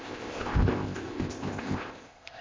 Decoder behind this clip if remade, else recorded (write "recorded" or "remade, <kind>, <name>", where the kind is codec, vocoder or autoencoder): remade, codec, ZipCodec